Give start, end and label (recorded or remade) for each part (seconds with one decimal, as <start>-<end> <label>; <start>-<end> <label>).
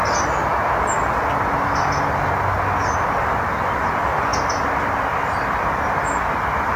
0.0-6.8 recorded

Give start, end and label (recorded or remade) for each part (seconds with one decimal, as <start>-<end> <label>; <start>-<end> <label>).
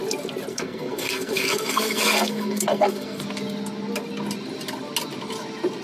0.0-0.5 recorded; 0.5-3.2 remade; 3.2-5.8 recorded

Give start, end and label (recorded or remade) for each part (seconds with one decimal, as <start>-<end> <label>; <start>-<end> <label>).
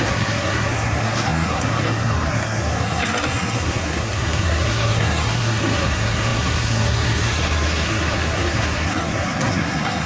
0.0-10.1 remade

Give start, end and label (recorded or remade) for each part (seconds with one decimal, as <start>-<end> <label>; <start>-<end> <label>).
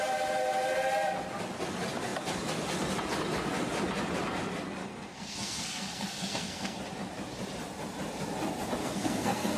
0.0-4.8 recorded; 4.8-6.8 remade; 6.8-8.8 recorded; 8.8-9.6 remade